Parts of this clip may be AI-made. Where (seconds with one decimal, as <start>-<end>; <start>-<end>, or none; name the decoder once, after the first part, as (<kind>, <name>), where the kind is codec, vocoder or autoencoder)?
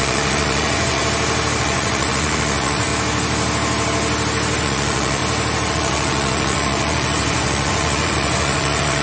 0.0-1.0 (vocoder, Vocos); 1.6-2.9; 4.6-5.2; 5.7-9.0